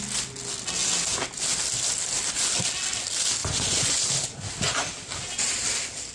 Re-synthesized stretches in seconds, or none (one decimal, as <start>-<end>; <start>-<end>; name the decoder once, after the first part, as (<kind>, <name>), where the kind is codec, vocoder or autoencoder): 3.4-4.0 (vocoder, Vocos)